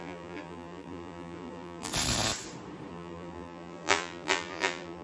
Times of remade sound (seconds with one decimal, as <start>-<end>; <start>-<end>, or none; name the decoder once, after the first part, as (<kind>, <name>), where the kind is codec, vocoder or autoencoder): 0.0-1.9 (vocoder, BigVGAN v2); 2.9-5.0